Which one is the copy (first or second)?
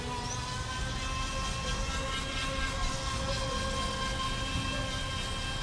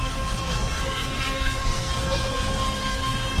second